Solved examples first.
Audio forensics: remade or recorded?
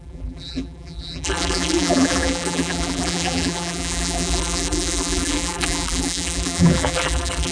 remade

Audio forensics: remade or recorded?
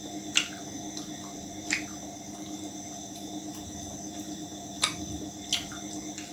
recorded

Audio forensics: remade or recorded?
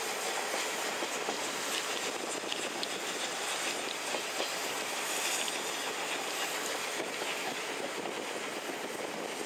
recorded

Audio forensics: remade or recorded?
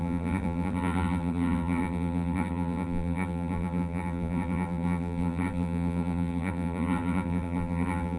remade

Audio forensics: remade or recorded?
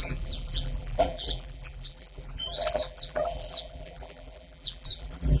remade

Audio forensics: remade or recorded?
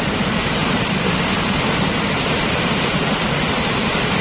remade